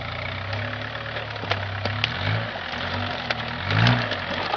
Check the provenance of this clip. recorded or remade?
recorded